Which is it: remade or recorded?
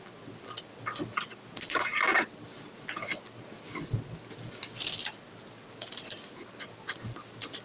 recorded